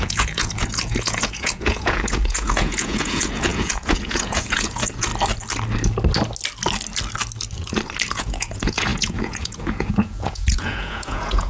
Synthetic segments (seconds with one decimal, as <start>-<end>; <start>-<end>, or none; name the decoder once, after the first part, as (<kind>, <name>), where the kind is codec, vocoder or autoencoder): 0.0-5.1 (vocoder, Vocos); 8.1-11.5